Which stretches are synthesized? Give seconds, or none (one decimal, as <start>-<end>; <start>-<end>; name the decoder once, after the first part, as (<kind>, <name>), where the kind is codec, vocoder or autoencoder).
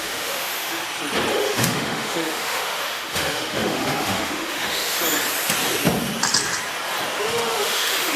0.0-0.8 (autoencoder, DAC-VAE); 1.3-5.0; 7.2-8.2